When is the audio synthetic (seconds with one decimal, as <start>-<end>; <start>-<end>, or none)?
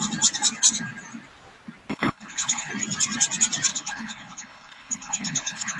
1.9-2.7; 3.7-5.8